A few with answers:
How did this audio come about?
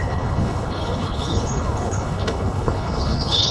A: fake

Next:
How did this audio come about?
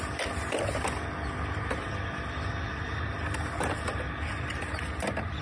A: real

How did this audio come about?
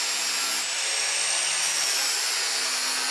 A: real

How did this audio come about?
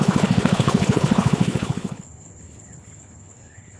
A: fake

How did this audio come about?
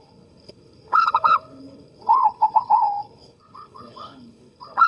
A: fake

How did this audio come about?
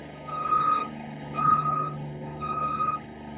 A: fake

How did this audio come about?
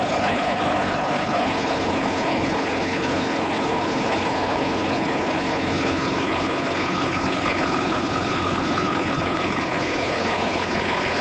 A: fake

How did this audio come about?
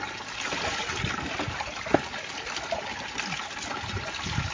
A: real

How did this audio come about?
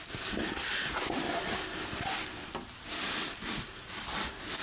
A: real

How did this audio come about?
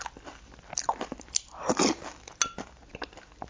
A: real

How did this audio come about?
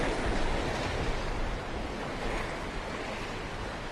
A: real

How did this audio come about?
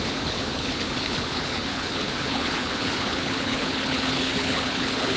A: fake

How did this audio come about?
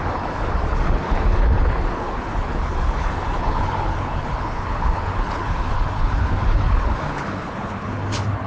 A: fake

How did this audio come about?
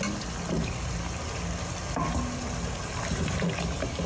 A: real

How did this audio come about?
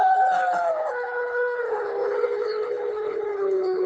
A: fake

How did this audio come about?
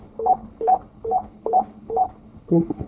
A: fake